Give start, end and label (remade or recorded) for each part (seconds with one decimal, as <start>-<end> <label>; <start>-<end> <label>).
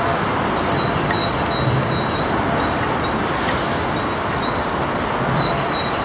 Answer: 0.0-6.0 recorded